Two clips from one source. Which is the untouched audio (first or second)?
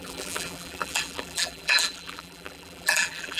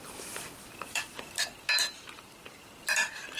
second